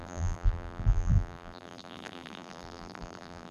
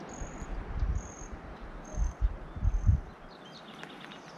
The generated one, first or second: first